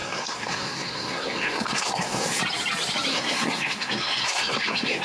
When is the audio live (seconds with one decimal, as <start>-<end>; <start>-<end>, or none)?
2.4-3.1